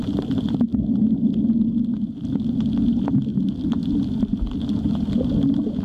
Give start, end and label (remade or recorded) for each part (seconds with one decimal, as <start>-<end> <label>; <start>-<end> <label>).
0.0-5.8 recorded